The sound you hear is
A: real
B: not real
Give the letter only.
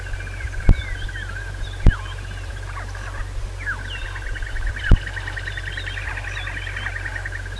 A